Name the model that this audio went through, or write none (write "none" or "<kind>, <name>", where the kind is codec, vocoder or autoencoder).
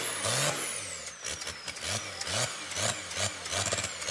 none